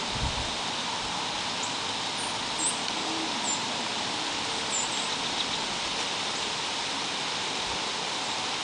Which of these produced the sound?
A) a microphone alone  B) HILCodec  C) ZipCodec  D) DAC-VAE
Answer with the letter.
A